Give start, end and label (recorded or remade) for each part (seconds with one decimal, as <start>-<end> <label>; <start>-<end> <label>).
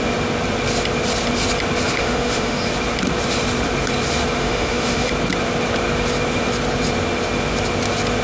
0.0-1.9 recorded; 1.9-2.6 remade; 2.6-4.4 recorded; 4.4-5.1 remade; 5.1-8.2 recorded